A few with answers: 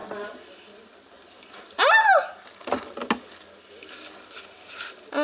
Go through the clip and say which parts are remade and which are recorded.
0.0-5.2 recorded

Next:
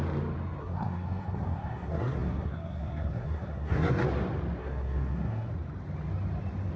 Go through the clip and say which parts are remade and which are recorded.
0.0-0.6 recorded; 0.6-4.0 remade; 4.0-4.6 recorded; 4.6-5.5 remade; 5.5-6.8 recorded

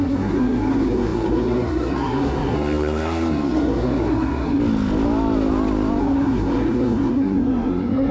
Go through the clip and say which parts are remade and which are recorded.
0.0-4.6 remade; 4.6-6.0 recorded; 6.0-8.1 remade

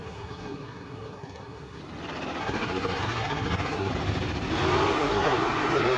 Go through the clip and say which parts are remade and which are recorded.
0.0-1.8 remade; 1.8-2.4 recorded; 2.4-3.9 remade; 3.9-4.9 recorded; 4.9-6.0 remade

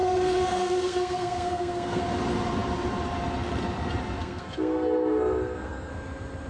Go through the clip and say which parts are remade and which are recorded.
0.0-2.0 remade; 2.0-4.2 recorded; 4.2-5.9 remade; 5.9-6.5 recorded

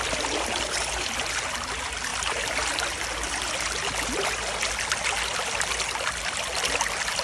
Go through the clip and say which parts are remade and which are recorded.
0.0-7.2 recorded